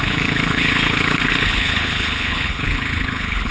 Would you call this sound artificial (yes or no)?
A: yes